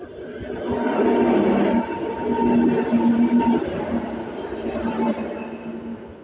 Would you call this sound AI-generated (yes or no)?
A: no